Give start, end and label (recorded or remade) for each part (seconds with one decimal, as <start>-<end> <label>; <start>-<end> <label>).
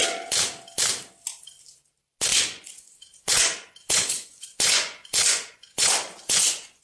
0.0-2.3 recorded; 2.3-6.8 remade